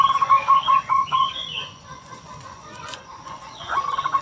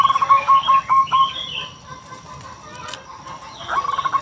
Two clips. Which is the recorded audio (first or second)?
second